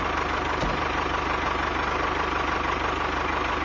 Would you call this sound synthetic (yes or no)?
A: no